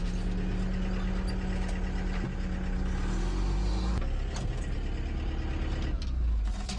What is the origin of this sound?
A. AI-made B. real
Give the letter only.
B